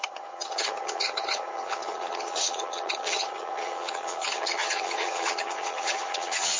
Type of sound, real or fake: fake